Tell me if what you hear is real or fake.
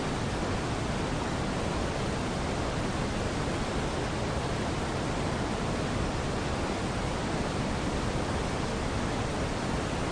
real